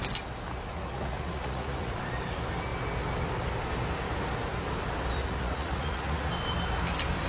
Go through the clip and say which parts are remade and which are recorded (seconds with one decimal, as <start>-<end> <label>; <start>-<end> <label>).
0.0-0.7 recorded; 0.7-2.0 remade; 2.0-5.2 recorded; 5.2-6.3 remade; 6.3-7.3 recorded